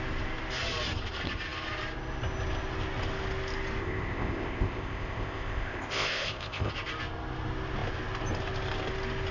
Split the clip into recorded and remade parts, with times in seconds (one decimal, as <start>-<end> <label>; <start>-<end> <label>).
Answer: 0.0-3.8 recorded; 3.8-6.7 remade; 6.7-9.3 recorded